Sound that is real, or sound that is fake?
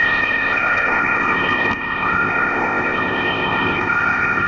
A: fake